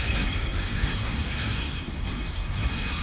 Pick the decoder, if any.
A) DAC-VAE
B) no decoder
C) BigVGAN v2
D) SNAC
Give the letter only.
D